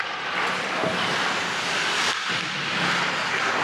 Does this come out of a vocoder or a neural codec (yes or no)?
yes